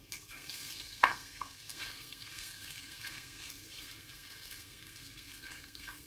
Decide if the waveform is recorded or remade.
remade